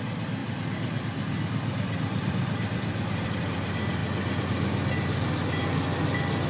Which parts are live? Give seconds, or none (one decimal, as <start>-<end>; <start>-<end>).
0.0-0.4; 3.4-6.5